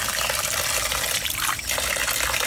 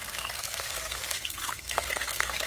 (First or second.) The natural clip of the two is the first